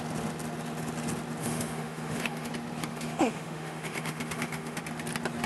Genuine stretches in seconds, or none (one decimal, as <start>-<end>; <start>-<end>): 0.0-1.4; 2.5-2.9; 4.8-5.5